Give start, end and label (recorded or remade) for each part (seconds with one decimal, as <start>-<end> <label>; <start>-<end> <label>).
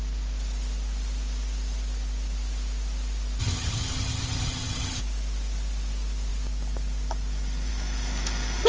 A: 0.0-3.4 recorded; 3.4-5.0 remade; 5.0-8.7 recorded